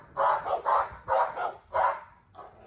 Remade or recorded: recorded